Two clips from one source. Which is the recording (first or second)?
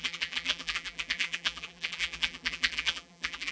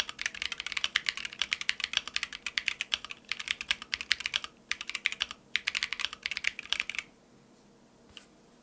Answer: second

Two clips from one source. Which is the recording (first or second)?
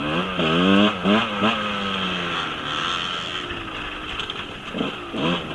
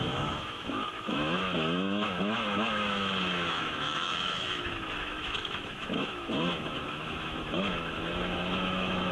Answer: first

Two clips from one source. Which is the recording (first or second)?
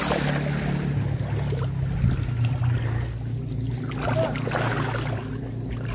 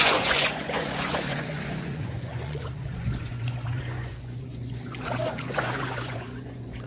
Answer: first